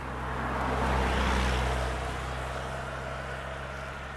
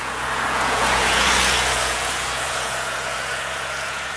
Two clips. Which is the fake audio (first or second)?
second